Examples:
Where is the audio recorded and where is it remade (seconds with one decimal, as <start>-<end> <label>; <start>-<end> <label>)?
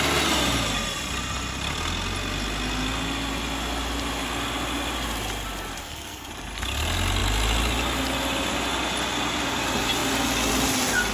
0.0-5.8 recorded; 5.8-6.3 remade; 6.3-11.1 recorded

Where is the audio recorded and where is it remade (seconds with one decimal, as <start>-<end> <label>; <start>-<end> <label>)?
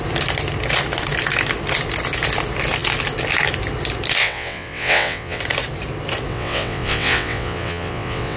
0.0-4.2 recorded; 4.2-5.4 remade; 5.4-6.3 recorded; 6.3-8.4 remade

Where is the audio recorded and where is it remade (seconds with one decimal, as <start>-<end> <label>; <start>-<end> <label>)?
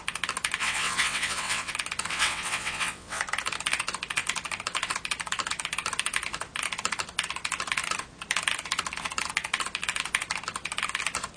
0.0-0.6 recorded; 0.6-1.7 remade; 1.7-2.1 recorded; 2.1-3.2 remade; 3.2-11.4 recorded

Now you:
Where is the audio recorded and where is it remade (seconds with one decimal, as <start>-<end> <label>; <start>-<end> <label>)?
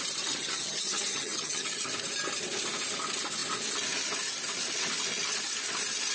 0.0-0.4 recorded; 0.4-1.9 remade; 1.9-6.1 recorded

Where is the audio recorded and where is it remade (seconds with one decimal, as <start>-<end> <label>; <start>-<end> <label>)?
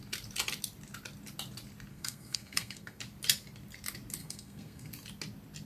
0.0-1.9 recorded; 1.9-3.0 remade; 3.0-4.2 recorded; 4.2-4.9 remade; 4.9-5.7 recorded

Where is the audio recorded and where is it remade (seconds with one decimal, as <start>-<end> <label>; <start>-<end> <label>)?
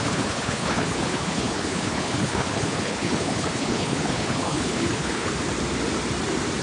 0.0-5.3 remade; 5.3-6.6 recorded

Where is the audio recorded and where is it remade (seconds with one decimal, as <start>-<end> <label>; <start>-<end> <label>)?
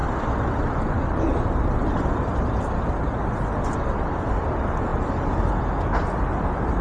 0.0-2.9 remade; 2.9-4.9 recorded; 4.9-5.5 remade; 5.5-6.8 recorded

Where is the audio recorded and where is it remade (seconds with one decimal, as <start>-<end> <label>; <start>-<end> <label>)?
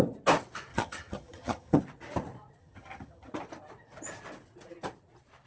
0.0-0.7 recorded; 0.7-1.8 remade; 1.8-2.6 recorded; 2.6-3.3 remade; 3.3-5.5 recorded